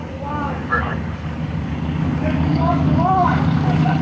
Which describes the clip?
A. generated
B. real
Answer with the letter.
A